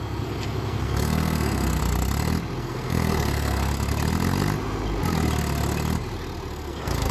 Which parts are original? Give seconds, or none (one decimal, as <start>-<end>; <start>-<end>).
1.8-2.6; 3.7-6.5